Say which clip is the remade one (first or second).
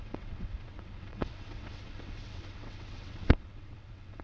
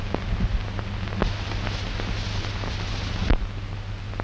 first